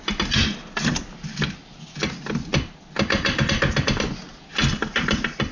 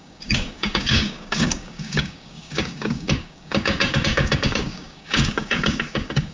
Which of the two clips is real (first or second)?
first